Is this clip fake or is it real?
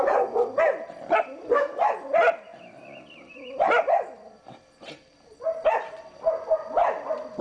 real